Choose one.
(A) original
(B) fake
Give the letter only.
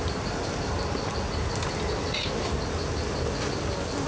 A